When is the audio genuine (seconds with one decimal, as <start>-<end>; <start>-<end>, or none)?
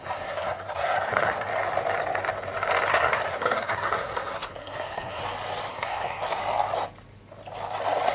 1.5-2.9; 5.2-5.7; 6.4-8.1